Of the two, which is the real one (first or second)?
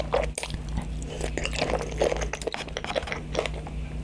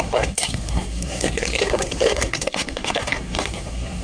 first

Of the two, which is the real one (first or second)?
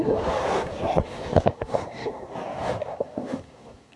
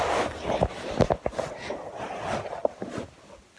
second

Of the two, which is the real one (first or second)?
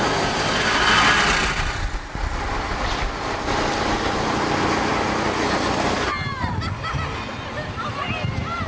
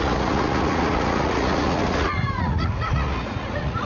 first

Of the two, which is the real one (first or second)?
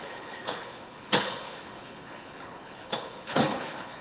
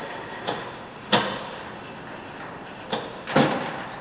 second